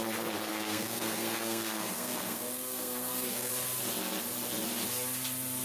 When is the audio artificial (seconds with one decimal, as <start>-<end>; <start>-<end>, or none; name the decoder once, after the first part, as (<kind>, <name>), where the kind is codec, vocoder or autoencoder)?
0.5-3.5 (codec, SNAC)